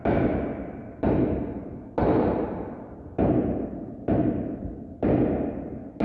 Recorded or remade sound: recorded